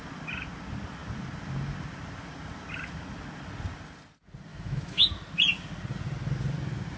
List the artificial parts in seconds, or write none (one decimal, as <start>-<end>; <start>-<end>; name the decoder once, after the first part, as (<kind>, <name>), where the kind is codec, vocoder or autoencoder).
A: 4.5-5.1 (autoencoder, DAC-VAE)